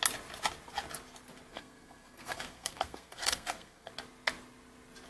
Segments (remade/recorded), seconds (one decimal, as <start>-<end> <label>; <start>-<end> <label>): 0.0-1.5 recorded; 1.5-3.9 remade; 3.9-5.1 recorded

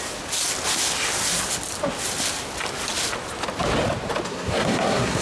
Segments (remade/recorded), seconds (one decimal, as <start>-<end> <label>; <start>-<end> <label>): 0.0-4.3 recorded; 4.3-5.2 remade

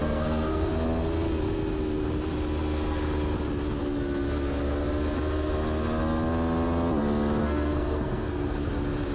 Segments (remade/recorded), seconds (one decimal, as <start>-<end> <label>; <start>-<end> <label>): 0.0-0.7 remade; 0.7-7.4 recorded; 7.4-8.7 remade; 8.7-9.1 recorded

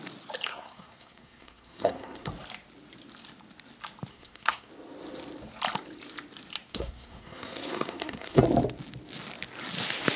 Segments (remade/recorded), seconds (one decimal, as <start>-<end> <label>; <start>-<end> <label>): 0.0-0.5 recorded; 0.5-2.3 remade; 2.3-4.1 recorded; 4.1-4.7 remade; 4.7-6.7 recorded; 6.7-8.4 remade; 8.4-10.2 recorded